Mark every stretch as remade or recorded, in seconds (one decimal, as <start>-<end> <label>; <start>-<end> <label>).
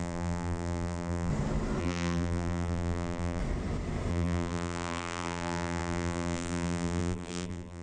0.0-1.3 remade; 1.3-1.8 recorded; 1.8-3.4 remade; 3.4-4.1 recorded; 4.1-7.8 remade